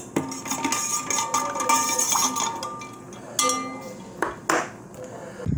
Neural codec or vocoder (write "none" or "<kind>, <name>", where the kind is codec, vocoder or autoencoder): none